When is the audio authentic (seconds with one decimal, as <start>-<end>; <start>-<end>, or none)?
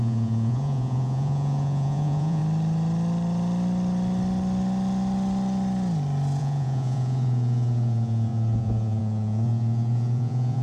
2.4-6.4